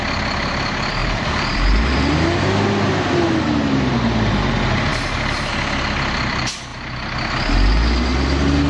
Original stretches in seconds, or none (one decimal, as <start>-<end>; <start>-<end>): 0.0-1.0; 1.9-4.9; 5.5-6.7; 7.3-8.7